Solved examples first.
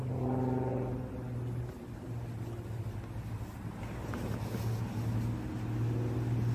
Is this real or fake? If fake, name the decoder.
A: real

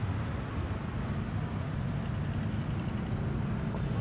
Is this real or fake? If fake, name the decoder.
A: real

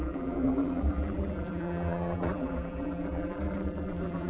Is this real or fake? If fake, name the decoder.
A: fake, vocoder, BigVGAN v2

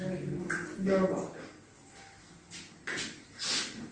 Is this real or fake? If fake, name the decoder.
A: real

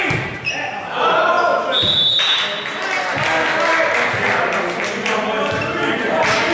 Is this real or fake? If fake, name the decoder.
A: real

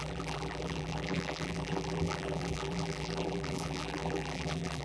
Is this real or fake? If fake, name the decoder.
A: fake, vocoder, BigVGAN v2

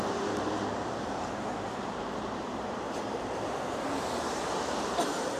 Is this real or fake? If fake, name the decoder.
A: fake, vocoder, BigVGAN v2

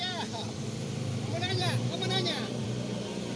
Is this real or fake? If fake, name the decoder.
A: fake, vocoder, BigVGAN v2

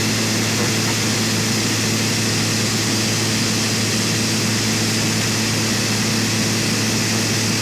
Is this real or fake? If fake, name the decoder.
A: real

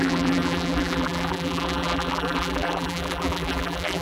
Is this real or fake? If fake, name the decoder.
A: fake, vocoder, BigVGAN v2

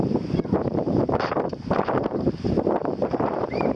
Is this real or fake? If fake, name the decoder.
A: fake, vocoder, BigVGAN v2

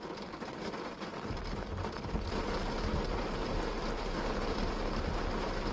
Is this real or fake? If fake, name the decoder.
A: real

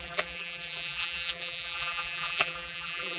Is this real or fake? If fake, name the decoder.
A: fake, vocoder, BigVGAN v2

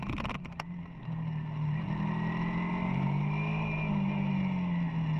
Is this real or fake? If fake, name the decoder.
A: real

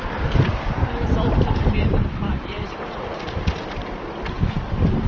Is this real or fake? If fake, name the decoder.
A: real